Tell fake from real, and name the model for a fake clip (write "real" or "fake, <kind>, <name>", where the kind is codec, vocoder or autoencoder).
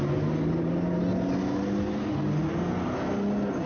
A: real